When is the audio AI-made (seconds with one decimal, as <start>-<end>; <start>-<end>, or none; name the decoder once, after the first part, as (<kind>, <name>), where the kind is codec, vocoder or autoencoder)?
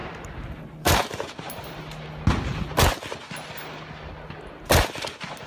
0.0-1.8 (vocoder, BigVGAN v2)